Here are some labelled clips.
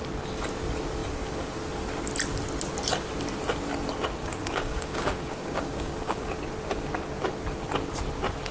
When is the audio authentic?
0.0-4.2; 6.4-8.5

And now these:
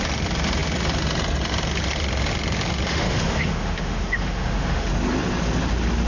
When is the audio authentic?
0.0-2.9; 4.9-6.1

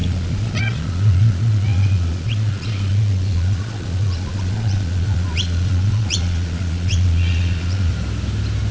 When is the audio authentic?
7.9-8.7

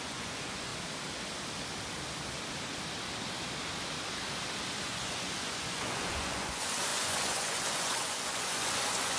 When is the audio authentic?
0.7-4.8